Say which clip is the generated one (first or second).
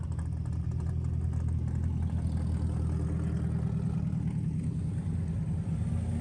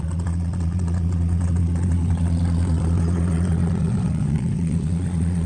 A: second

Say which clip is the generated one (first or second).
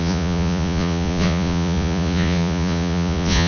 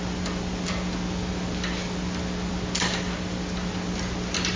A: first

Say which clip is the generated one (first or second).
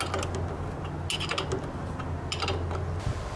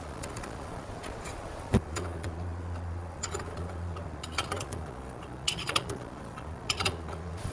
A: second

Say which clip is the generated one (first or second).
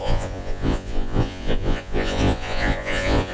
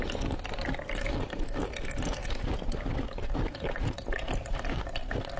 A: first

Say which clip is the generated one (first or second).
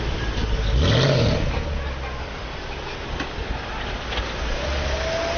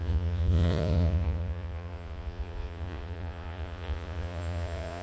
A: second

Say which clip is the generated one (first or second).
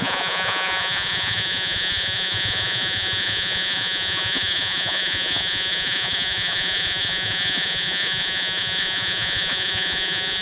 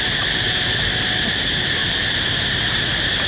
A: first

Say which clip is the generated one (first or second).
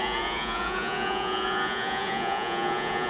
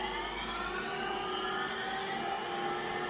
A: first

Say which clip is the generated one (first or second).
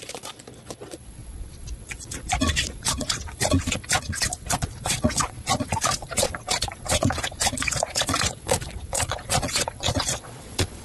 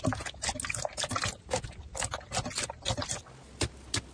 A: first